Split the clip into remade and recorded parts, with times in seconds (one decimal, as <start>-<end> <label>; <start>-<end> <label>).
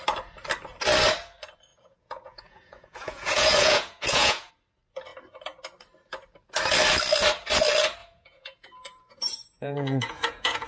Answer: 0.0-1.7 recorded; 1.7-4.5 remade; 4.5-8.0 recorded; 8.0-10.7 remade